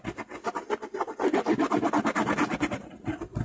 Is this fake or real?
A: real